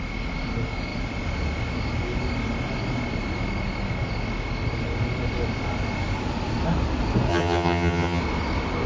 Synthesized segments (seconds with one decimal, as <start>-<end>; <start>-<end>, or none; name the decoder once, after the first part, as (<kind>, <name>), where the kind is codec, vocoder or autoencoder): 7.3-8.2 (vocoder, HiFi-GAN)